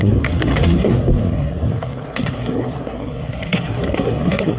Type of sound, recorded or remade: remade